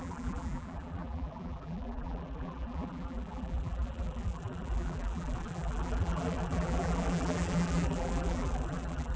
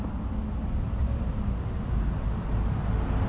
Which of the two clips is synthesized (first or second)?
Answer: first